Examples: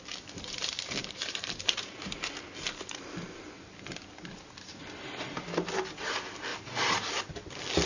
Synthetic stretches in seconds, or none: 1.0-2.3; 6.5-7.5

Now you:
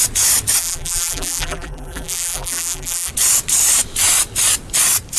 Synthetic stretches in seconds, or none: 0.6-3.1

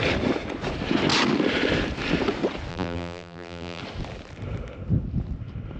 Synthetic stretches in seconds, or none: 2.7-3.8

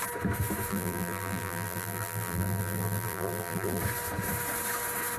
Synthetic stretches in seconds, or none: 0.7-3.8

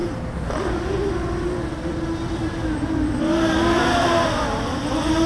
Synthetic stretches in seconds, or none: 0.0-3.2; 3.6-4.8

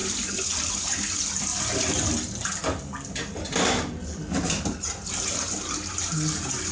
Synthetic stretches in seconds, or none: 0.0-1.0; 1.5-4.3